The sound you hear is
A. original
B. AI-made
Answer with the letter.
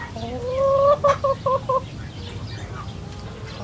A